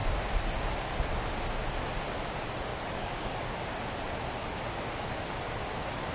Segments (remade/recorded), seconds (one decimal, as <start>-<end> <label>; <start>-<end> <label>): 0.0-2.7 recorded; 2.7-3.6 remade; 3.6-6.1 recorded